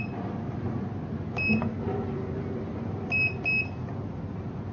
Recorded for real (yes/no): yes